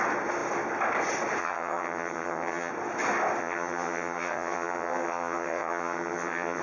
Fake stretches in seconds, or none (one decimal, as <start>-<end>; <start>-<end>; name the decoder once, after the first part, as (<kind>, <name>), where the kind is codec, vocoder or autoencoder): 1.4-2.7 (vocoder, HiFi-GAN); 3.4-6.6